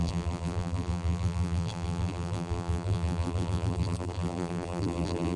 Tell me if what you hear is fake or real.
fake